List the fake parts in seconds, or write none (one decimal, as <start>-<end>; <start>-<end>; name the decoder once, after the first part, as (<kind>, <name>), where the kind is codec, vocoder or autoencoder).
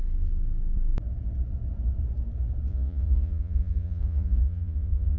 2.7-5.2 (vocoder, Vocos)